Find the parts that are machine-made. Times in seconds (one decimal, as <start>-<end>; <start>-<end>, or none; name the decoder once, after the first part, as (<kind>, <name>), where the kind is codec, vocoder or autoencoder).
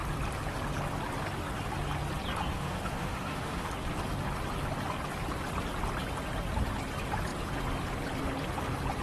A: 2.5-3.7 (autoencoder, DAC-VAE)